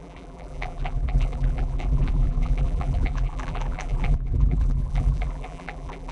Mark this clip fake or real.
fake